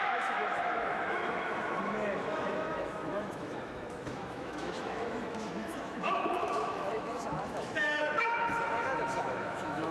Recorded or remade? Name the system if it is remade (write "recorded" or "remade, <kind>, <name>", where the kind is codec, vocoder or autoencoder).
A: remade, autoencoder, DAC-VAE